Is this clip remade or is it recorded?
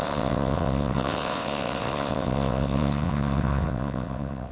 remade